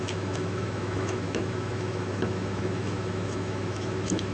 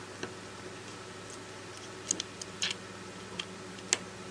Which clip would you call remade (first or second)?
first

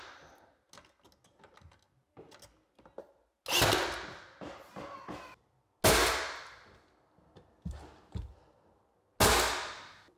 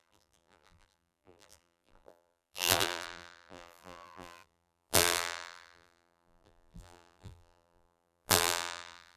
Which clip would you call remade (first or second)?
second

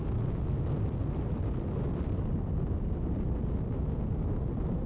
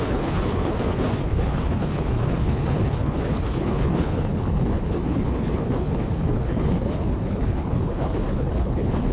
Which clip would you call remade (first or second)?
second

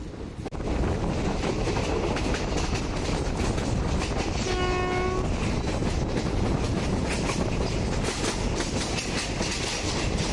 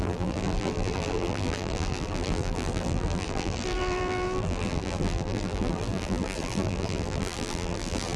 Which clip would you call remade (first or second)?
second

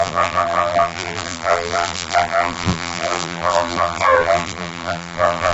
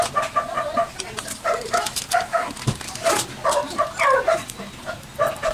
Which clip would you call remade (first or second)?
first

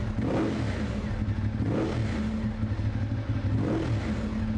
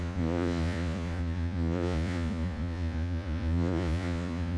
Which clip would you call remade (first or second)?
second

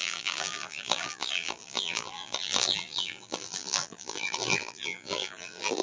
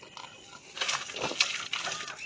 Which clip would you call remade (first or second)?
first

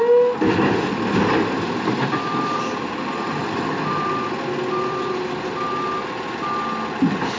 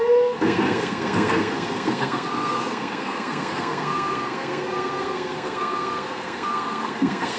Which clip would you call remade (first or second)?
second